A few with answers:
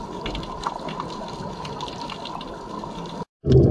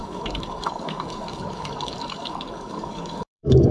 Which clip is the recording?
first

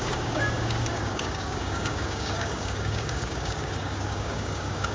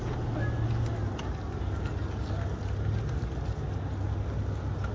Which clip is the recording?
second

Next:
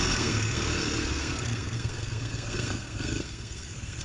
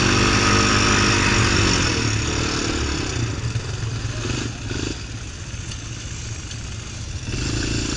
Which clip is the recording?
second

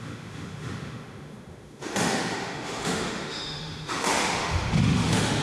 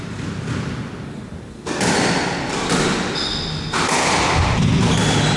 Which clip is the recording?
second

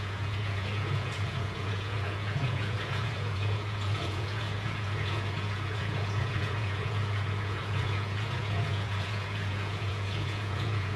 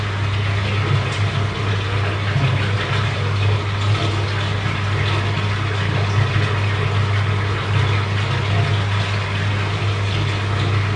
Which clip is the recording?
second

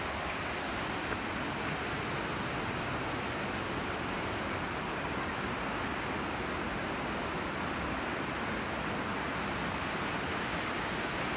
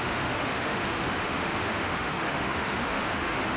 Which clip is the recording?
first